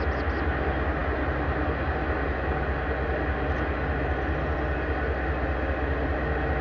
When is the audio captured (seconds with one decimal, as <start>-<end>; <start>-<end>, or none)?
0.0-6.6